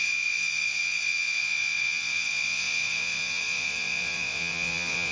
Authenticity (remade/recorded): remade